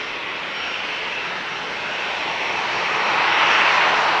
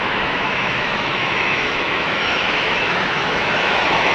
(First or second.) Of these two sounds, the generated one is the second